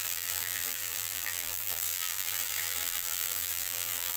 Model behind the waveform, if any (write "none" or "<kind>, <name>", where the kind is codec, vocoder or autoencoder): vocoder, BigVGAN v2